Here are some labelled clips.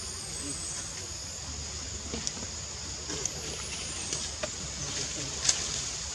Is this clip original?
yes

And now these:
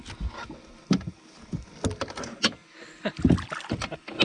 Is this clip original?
yes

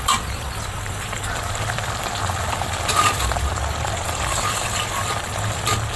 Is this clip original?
no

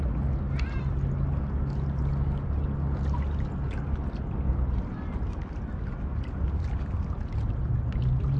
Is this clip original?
yes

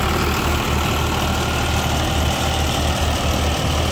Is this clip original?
yes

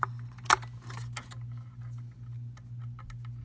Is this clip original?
yes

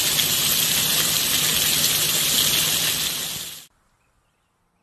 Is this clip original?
yes